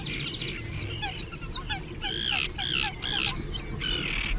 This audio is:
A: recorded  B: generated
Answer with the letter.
A